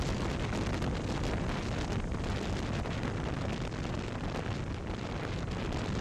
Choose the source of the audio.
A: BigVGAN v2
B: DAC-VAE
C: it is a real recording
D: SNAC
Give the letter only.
C